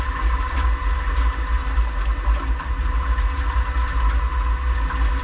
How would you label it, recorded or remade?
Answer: recorded